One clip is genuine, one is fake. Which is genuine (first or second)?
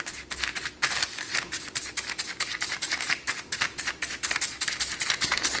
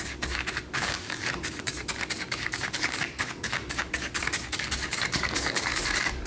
first